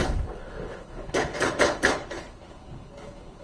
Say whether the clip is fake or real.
fake